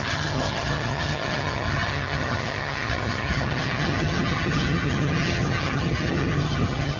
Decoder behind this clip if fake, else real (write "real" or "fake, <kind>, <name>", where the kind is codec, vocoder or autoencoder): fake, vocoder, HiFi-GAN